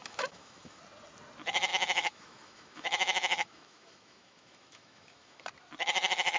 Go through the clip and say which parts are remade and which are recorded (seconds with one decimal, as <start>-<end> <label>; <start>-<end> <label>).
0.0-0.8 remade; 0.8-1.7 recorded; 1.7-5.5 remade; 5.5-6.4 recorded